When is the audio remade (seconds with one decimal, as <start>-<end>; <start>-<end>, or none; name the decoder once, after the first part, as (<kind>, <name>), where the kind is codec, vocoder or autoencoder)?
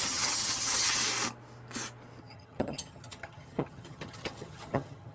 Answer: 0.0-1.0 (vocoder, HiFi-GAN); 2.2-5.1